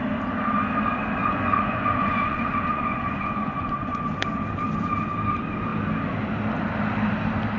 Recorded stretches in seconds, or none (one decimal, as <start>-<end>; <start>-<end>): 0.0-1.2; 4.0-7.6